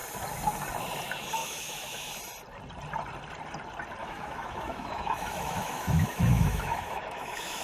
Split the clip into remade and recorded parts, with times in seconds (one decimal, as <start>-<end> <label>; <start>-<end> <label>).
0.0-1.4 recorded; 1.4-2.1 remade; 2.1-4.0 recorded; 4.0-7.6 remade